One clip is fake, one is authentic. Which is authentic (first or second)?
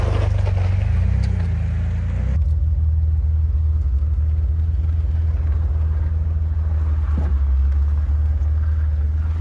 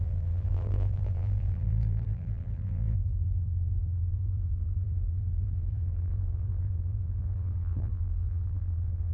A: first